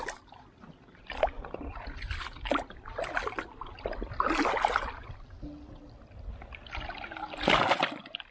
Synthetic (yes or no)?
no